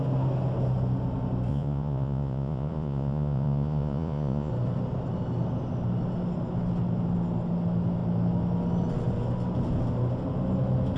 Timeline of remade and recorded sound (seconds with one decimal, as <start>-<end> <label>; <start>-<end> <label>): 0.0-1.5 recorded; 1.5-4.5 remade; 4.5-11.0 recorded